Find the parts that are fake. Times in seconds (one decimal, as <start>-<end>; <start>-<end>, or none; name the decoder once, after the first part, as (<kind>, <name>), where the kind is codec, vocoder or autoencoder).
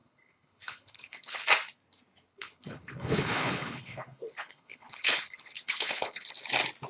0.0-1.4 (codec, HILCodec); 2.3-6.3